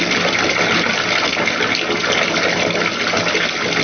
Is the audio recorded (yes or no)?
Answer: yes